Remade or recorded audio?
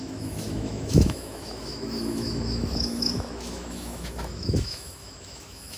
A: remade